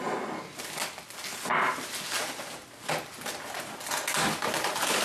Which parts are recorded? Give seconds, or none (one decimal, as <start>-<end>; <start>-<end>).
0.0-5.0